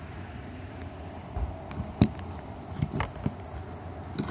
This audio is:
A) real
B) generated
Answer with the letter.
A